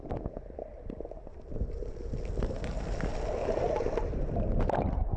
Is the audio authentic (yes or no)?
yes